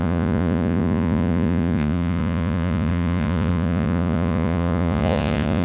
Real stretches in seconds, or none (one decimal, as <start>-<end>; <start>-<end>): none